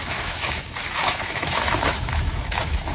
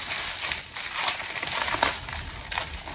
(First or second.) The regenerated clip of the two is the first